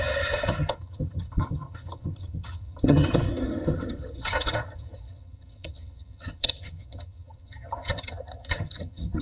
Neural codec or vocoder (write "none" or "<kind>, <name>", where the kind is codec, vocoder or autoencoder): vocoder, HiFi-GAN